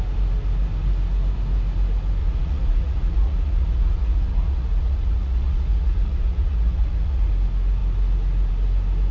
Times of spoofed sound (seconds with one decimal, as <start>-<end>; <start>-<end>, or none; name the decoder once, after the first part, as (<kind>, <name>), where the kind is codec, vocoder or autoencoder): 2.2-7.3 (vocoder, Vocos)